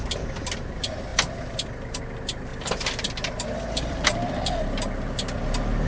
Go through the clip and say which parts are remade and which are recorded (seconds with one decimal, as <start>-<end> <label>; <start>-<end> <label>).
0.0-1.1 recorded; 1.1-2.0 remade; 2.0-2.5 recorded; 2.5-4.1 remade; 4.1-5.9 recorded